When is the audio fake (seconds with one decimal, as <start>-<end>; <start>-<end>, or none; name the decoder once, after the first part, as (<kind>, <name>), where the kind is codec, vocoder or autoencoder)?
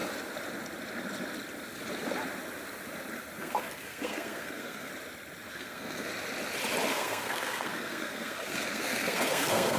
3.4-4.9 (codec, SNAC); 5.5-6.1; 6.9-9.8